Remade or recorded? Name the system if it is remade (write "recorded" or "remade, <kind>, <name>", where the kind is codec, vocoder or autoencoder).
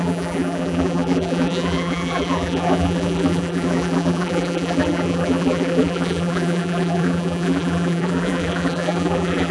remade, vocoder, BigVGAN v2